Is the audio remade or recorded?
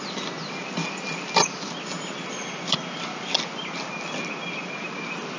recorded